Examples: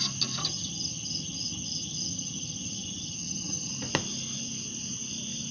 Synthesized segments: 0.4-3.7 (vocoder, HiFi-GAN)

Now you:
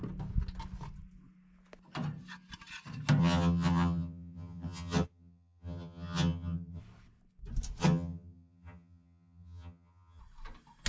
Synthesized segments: 3.2-6.8 (vocoder, HiFi-GAN); 7.8-10.2